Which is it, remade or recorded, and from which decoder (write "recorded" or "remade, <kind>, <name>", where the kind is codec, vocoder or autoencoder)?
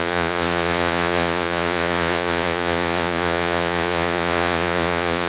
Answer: remade, vocoder, Vocos